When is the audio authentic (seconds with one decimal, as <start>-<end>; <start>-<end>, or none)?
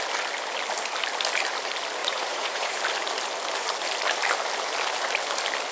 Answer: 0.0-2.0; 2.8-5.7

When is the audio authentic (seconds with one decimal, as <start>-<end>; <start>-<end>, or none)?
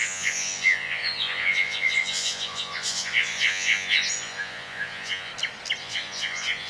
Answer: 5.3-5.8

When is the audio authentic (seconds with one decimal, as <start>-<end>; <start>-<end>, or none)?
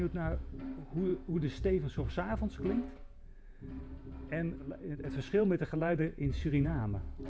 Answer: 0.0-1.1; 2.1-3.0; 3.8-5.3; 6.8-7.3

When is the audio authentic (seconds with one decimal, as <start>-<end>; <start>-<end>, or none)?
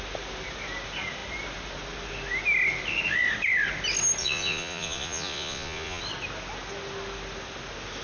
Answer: 0.0-4.2; 6.0-8.0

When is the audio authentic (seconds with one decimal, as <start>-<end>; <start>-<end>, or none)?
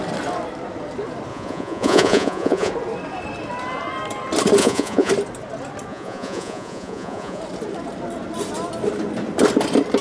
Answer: 0.0-1.3; 2.7-4.6; 5.1-5.9; 7.4-10.0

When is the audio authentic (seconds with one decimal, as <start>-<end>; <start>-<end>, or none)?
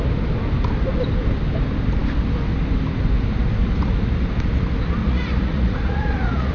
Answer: 0.0-5.0